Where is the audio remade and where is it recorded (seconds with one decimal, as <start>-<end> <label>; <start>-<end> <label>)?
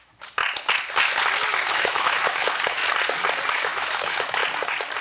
0.0-0.4 remade; 0.4-1.7 recorded; 1.7-2.8 remade; 2.8-3.5 recorded; 3.5-4.4 remade; 4.4-5.0 recorded